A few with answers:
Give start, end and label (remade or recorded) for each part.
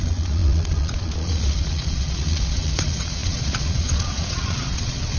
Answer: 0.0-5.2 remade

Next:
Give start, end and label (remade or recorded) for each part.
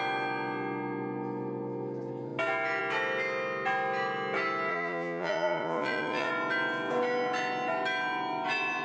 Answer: 0.0-4.7 recorded; 4.7-6.3 remade; 6.3-8.8 recorded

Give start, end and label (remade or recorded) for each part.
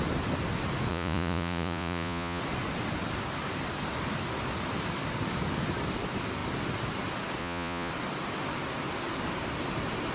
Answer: 0.0-0.9 recorded; 0.9-2.4 remade; 2.4-7.4 recorded; 7.4-7.9 remade; 7.9-10.1 recorded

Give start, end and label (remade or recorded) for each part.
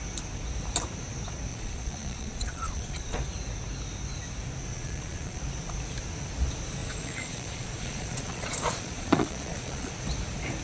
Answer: 0.0-1.5 recorded; 1.5-3.2 remade; 3.2-4.7 recorded; 4.7-5.4 remade; 5.4-6.8 recorded; 6.8-9.9 remade; 9.9-10.6 recorded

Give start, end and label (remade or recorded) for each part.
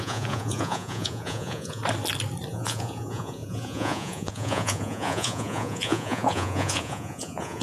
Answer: 0.0-1.8 remade; 1.8-2.5 recorded; 2.5-7.6 remade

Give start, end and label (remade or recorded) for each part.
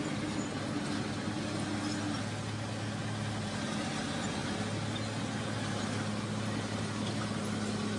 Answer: 0.0-8.0 recorded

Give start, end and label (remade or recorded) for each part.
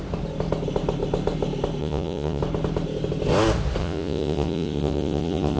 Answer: 0.0-1.8 recorded; 1.8-2.4 remade; 2.4-3.8 recorded; 3.8-5.6 remade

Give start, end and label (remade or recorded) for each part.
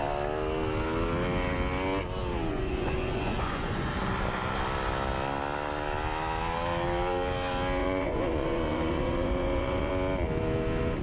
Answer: 0.0-2.5 recorded; 2.5-3.9 remade; 3.9-7.8 recorded; 7.8-9.9 remade; 9.9-11.0 recorded